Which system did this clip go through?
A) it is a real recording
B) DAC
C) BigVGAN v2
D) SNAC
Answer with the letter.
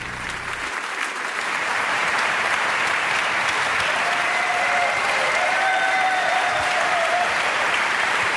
C